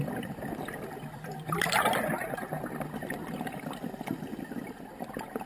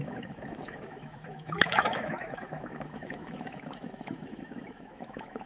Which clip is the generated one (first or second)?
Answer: second